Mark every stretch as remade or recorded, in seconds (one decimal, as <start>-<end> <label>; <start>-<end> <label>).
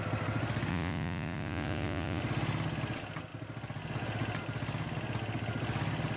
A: 0.0-0.7 recorded; 0.7-2.2 remade; 2.2-6.2 recorded